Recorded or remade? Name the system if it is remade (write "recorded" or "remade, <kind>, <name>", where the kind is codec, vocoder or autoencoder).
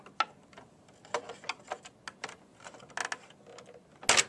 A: recorded